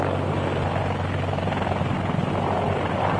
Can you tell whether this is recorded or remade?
recorded